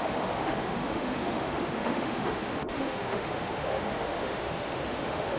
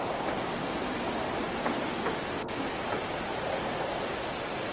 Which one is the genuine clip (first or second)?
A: second